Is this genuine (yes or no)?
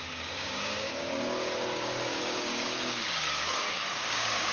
no